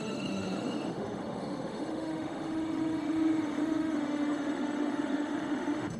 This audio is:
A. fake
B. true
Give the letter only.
A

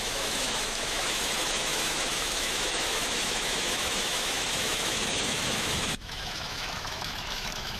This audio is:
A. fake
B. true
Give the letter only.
A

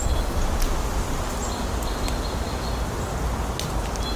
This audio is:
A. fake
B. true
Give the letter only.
B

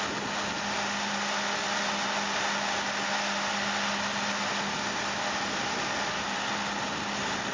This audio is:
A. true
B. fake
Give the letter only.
A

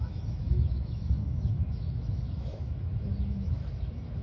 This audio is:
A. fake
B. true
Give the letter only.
A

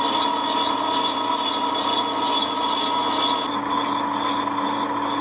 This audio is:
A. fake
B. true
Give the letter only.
B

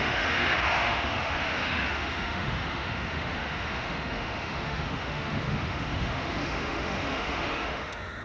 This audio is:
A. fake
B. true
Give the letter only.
A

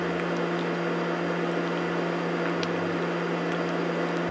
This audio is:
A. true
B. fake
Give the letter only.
A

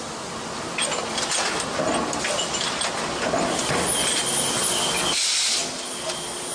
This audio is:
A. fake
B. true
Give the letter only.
B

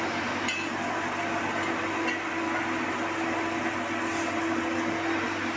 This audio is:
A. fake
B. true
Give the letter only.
B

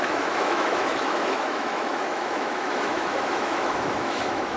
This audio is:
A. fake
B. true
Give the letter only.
A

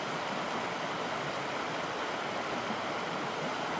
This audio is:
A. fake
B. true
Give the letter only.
B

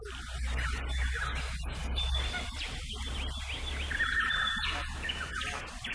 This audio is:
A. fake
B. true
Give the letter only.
B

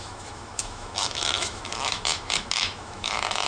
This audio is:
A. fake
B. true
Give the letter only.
A